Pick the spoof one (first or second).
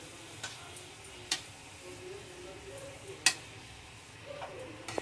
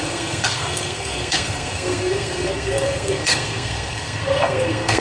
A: second